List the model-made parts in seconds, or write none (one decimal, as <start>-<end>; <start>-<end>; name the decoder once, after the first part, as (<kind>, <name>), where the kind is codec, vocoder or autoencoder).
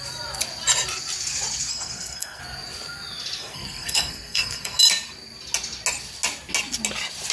1.7-2.4 (codec, SNAC); 3.4-4.8